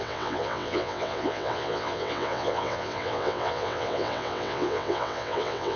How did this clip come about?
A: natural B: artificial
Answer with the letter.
B